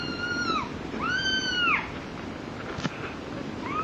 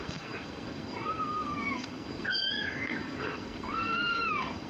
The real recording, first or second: first